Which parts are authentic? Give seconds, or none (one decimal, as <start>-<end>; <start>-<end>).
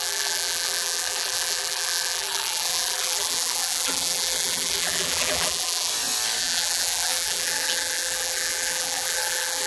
5.9-6.4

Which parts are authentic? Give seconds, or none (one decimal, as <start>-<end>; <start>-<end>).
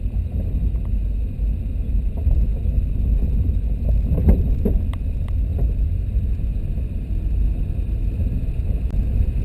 0.0-4.2; 4.8-5.5; 6.2-9.4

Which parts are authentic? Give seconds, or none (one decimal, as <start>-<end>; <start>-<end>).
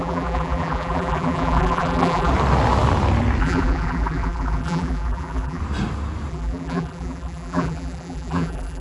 2.3-3.4; 5.6-6.3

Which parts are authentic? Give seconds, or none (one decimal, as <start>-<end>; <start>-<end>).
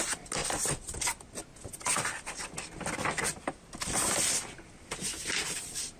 0.0-0.4; 1.4-6.0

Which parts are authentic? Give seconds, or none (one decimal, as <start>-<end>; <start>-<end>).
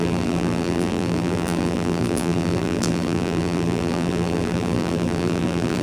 none